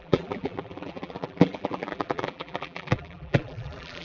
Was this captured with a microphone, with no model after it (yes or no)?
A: no